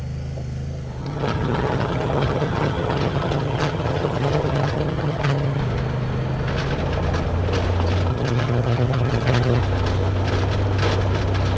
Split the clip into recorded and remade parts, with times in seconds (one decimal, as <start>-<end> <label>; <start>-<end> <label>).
0.0-1.0 recorded; 1.0-5.6 remade; 5.6-8.1 recorded; 8.1-9.6 remade; 9.6-11.6 recorded